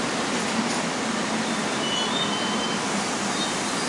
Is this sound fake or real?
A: real